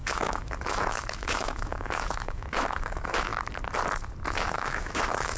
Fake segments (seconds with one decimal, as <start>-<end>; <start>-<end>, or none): 0.0-3.3; 4.3-5.4